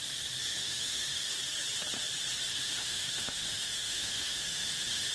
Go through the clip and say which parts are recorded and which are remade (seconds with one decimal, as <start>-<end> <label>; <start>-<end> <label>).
0.0-0.5 recorded; 0.5-1.3 remade; 1.3-2.5 recorded; 2.5-5.1 remade